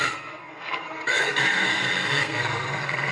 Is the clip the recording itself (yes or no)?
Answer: no